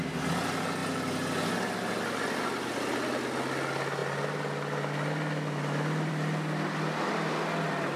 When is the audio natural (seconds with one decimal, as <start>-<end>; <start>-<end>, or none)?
0.0-8.0